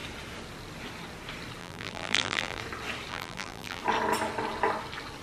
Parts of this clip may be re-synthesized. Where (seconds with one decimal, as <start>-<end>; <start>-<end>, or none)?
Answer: 1.6-2.6; 3.1-3.8